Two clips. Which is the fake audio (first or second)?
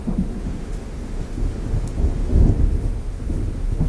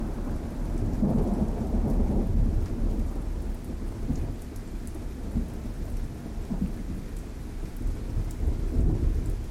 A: first